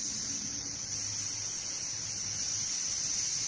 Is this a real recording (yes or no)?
yes